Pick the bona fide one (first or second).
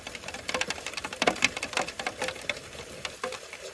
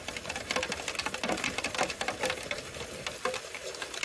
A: second